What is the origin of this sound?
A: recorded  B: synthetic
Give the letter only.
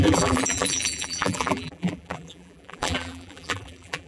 B